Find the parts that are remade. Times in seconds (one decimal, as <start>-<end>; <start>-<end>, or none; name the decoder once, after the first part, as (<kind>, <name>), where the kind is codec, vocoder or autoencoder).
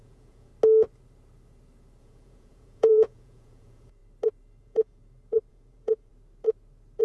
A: 0.0-0.5 (vocoder, Vocos); 2.0-4.0; 4.6-5.0; 5.5-6.1